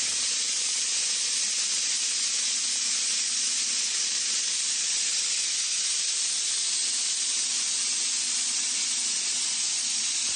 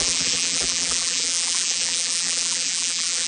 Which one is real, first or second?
first